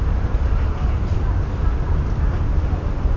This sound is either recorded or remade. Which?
recorded